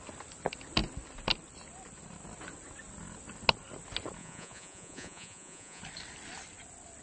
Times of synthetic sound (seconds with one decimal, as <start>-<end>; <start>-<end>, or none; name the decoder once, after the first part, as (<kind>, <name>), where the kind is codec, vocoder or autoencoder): 4.2-5.8 (vocoder, Vocos)